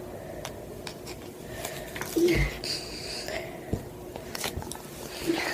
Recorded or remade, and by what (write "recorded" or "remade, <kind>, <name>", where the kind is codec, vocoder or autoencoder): recorded